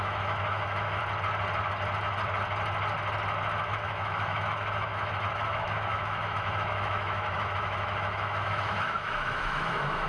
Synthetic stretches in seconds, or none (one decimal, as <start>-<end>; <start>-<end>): 0.0-1.0; 3.6-10.1